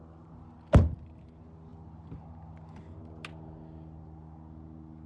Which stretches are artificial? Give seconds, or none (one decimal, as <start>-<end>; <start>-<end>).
none